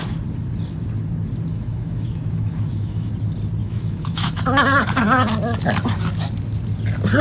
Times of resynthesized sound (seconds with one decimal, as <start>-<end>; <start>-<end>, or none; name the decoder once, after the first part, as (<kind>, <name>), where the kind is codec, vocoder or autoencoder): 1.5-3.1 (autoencoder, DAC-VAE); 3.6-4.4